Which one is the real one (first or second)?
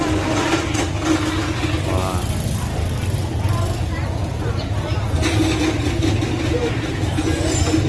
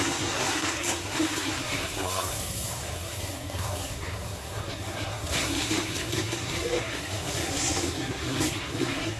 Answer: first